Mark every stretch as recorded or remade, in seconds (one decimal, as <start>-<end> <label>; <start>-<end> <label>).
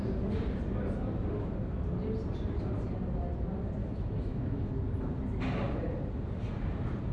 0.0-3.8 recorded; 3.8-4.7 remade; 4.7-7.1 recorded